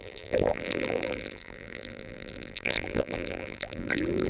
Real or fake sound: fake